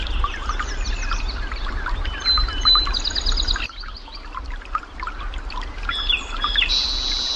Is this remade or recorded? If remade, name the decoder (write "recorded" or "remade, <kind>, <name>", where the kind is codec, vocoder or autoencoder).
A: recorded